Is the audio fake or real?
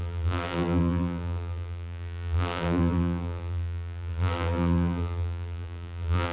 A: fake